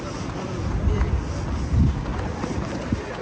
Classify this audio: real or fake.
real